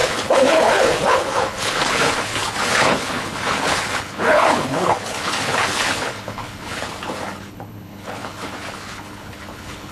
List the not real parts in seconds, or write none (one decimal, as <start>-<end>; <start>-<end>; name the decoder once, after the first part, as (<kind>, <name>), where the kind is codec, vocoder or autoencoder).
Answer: 0.0-9.9 (codec, HILCodec)